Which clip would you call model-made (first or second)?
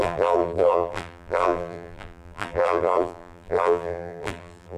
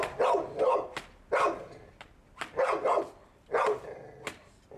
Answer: first